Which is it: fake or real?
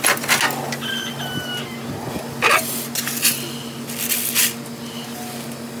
real